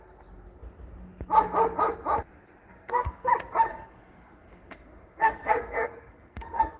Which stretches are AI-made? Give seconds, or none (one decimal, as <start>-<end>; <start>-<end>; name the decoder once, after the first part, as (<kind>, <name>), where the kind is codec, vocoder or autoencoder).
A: 2.7-3.3 (codec, SNAC); 3.7-6.8